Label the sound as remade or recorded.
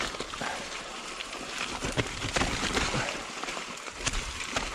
recorded